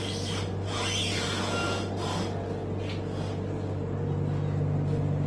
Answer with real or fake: real